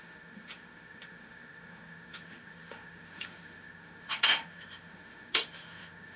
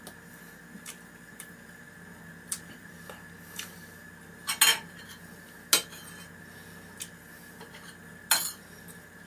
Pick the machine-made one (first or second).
first